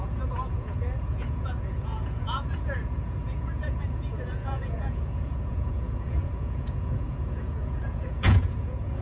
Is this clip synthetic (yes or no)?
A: yes